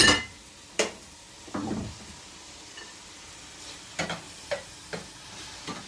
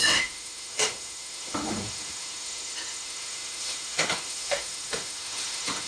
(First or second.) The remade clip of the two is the second